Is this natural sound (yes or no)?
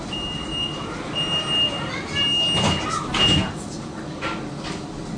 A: yes